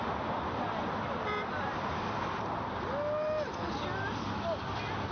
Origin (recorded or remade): recorded